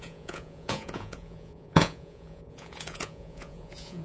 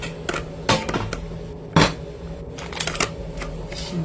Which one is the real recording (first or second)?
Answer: second